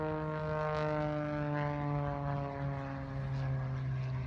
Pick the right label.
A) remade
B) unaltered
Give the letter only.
B